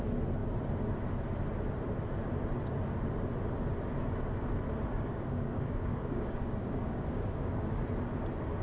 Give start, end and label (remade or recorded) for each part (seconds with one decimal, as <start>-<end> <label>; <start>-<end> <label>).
0.0-4.9 recorded; 4.9-7.8 remade; 7.8-8.6 recorded